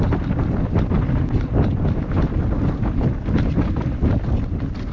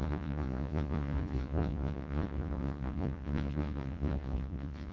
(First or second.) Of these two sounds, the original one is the first